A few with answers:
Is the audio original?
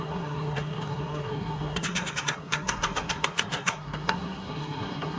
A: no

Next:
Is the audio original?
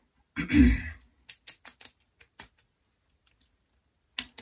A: yes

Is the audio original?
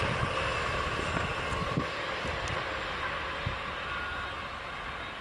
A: yes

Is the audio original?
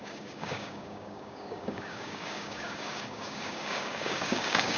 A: no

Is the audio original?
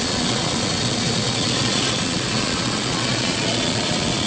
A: no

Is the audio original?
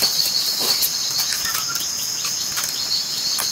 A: yes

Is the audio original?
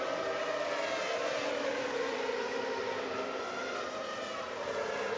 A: yes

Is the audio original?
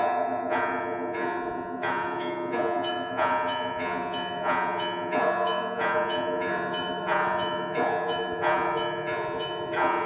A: no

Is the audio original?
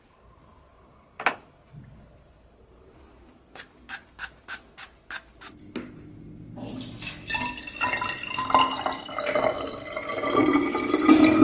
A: yes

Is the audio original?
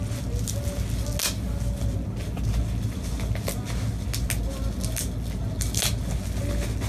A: yes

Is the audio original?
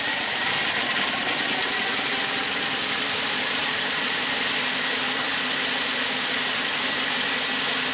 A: yes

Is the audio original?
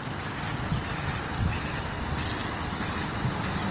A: yes